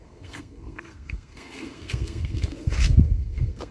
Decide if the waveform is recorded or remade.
remade